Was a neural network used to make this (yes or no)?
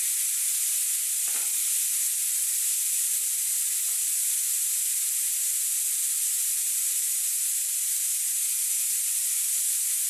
no